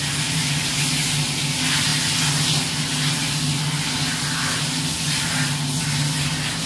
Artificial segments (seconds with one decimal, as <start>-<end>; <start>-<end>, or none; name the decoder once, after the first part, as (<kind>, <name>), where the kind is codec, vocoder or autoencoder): none